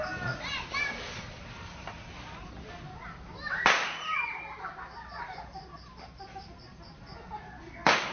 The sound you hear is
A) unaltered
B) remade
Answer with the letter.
A